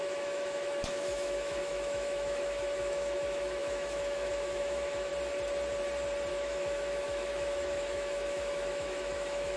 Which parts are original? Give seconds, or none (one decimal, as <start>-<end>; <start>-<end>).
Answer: 5.1-6.3